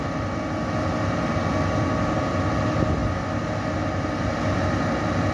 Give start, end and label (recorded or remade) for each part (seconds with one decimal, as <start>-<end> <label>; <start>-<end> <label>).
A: 0.0-5.3 recorded